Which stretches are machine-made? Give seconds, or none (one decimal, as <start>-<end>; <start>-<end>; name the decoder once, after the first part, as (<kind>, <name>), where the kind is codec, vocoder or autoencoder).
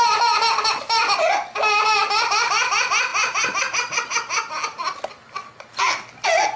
none